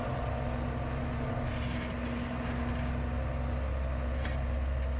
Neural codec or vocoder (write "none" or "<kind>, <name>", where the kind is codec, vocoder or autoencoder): none